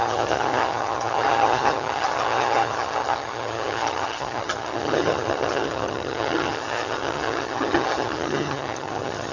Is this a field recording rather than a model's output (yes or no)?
no